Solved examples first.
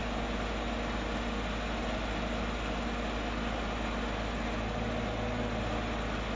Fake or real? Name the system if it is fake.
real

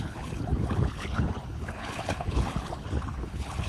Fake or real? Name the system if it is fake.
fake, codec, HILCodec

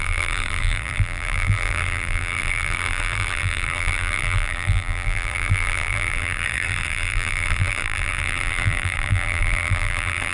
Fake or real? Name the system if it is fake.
fake, vocoder, BigVGAN v2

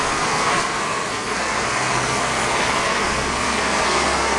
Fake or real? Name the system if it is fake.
fake, codec, SNAC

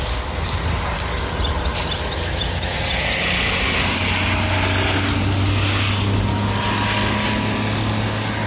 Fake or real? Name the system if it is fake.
real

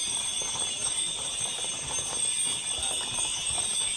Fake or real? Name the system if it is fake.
real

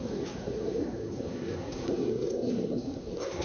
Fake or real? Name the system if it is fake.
fake, codec, SNAC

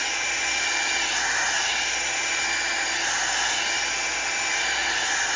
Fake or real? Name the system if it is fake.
real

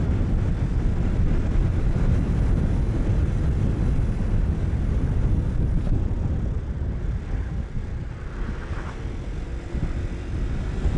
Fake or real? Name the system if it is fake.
real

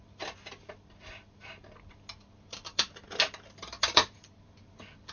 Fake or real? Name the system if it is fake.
real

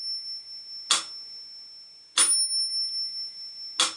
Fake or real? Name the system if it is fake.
real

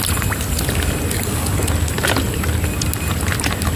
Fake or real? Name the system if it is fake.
real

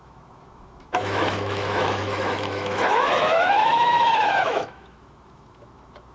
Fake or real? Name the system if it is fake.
fake, autoencoder, DAC-VAE